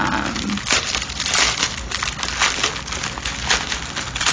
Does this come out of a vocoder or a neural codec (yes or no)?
no